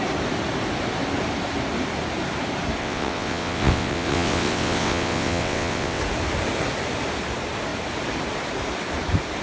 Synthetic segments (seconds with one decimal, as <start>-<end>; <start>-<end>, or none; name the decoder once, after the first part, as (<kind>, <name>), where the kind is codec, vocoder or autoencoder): 2.8-6.0 (vocoder, WaveNeXt)